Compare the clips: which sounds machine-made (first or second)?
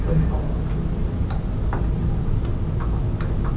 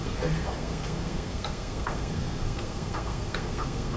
second